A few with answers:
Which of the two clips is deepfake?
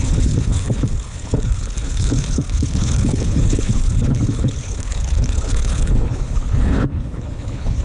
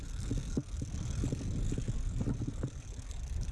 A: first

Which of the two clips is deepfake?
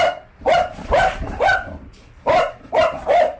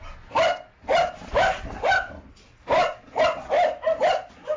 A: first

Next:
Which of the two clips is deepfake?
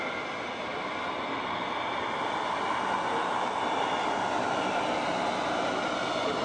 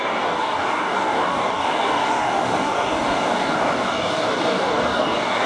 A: second